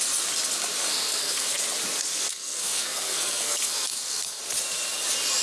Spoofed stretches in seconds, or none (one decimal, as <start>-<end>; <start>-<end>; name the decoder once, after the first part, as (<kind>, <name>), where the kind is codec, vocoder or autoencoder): 0.8-1.6 (codec, SNAC); 2.1-4.4